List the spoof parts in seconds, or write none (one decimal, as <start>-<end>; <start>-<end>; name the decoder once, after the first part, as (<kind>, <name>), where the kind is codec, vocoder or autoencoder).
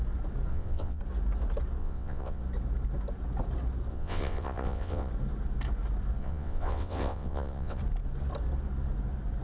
0.5-1.0 (vocoder, WaveNeXt); 1.8-2.4; 3.9-5.1; 6.2-7.8